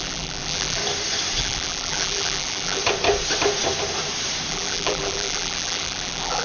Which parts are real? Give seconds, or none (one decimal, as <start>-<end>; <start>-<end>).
0.8-1.4; 2.8-4.5